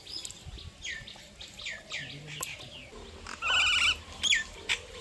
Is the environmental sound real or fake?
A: real